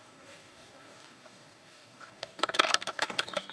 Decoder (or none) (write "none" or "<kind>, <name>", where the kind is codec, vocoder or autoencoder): codec, DAC